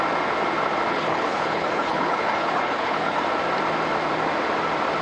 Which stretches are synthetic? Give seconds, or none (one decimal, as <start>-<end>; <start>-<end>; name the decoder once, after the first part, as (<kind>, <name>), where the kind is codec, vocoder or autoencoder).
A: 0.9-3.2 (codec, HILCodec)